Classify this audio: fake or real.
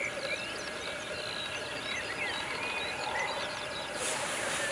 real